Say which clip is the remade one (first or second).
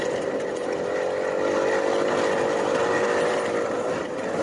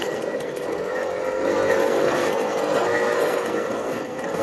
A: second